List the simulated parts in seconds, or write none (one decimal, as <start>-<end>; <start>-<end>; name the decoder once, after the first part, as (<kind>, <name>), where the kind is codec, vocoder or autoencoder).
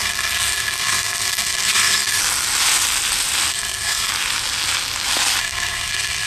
0.0-2.2 (codec, SNAC); 3.5-4.1; 5.4-6.3